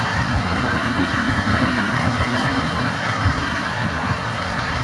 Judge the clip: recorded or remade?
remade